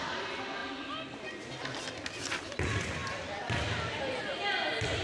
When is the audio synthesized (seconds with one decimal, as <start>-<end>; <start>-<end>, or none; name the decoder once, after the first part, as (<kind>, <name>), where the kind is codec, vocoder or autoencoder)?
none